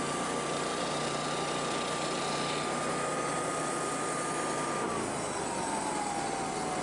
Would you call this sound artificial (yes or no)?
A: no